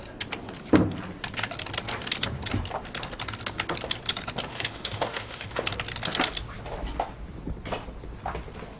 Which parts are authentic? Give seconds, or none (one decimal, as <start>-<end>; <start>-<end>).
0.0-4.5; 5.6-8.8